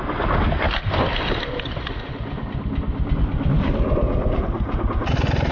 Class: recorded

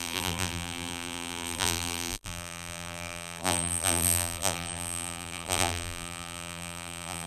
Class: remade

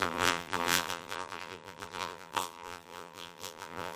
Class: remade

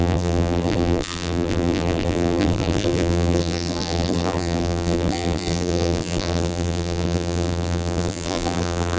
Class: remade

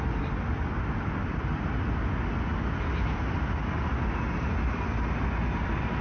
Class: recorded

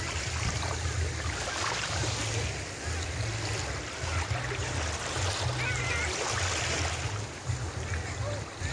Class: recorded